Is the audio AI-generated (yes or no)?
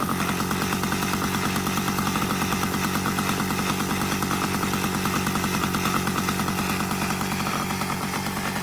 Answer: no